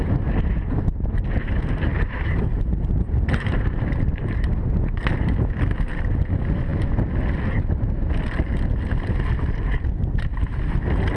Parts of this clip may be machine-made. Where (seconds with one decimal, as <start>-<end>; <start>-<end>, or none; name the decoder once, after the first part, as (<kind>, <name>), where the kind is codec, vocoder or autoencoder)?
1.9-4.7 (vocoder, BigVGAN v2)